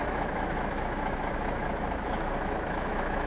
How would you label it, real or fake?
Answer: fake